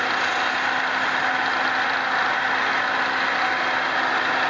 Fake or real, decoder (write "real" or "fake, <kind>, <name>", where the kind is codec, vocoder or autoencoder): real